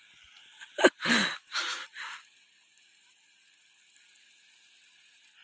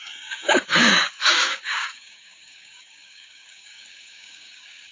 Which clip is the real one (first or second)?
first